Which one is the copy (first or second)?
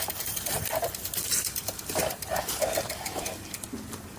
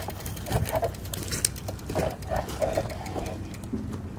first